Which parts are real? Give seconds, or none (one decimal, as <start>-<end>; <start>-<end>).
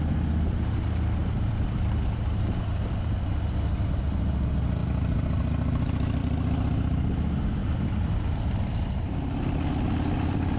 0.0-1.2; 4.0-7.6; 9.2-10.6